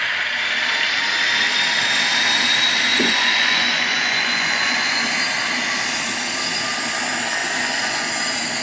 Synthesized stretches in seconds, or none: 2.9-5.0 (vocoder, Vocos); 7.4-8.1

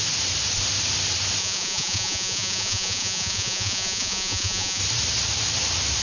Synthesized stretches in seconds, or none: 1.4-4.8 (vocoder, Vocos)

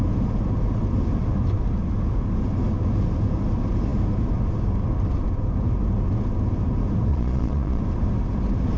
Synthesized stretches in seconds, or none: 7.1-7.8 (vocoder, Vocos)

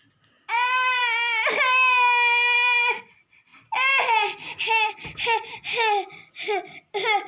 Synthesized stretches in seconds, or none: none

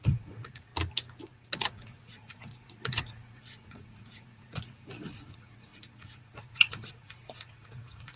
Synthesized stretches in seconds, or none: 0.0-0.7 (vocoder, Vocos); 1.2-8.2

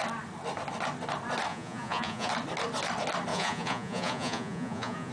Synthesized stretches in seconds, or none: 1.5-2.3 (vocoder, Vocos); 3.3-5.1

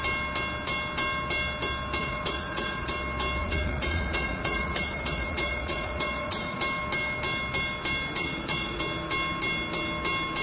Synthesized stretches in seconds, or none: 2.0-2.9 (vocoder, Vocos); 3.4-6.6; 8.2-8.8